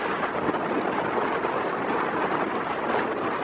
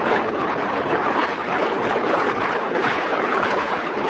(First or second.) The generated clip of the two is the second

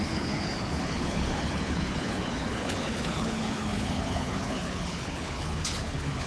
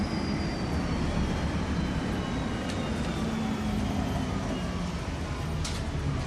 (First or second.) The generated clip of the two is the first